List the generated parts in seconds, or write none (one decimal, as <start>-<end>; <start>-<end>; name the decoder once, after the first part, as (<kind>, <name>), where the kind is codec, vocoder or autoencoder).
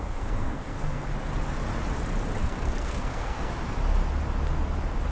0.0-1.1 (codec, SNAC); 2.4-3.5